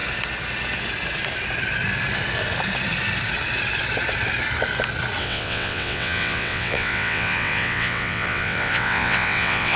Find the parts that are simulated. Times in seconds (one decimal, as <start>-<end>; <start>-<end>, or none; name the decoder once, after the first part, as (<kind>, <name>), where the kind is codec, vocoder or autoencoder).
5.2-9.8 (vocoder, WaveNeXt)